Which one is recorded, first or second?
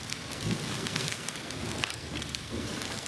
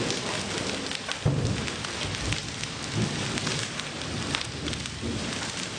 second